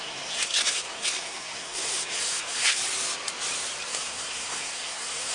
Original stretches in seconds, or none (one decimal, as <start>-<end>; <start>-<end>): 2.8-3.9

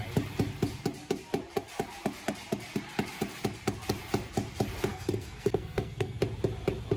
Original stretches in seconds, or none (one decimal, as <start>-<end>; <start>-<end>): 0.0-4.9; 6.2-7.0

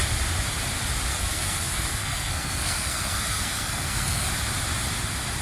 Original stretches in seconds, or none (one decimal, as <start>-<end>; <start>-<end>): 0.0-1.1; 4.3-5.4

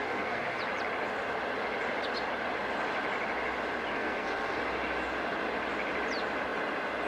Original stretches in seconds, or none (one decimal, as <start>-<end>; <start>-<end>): 0.6-3.9; 4.6-7.1

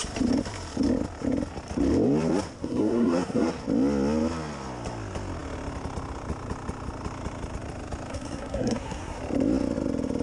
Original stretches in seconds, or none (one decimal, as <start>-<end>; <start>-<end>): 0.0-2.6; 3.5-8.1; 9.2-10.2

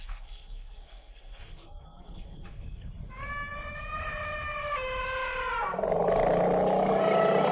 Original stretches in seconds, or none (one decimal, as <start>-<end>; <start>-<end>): 2.9-7.5

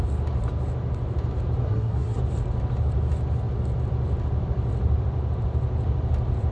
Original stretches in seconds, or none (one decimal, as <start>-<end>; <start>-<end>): 0.0-1.6; 2.2-6.5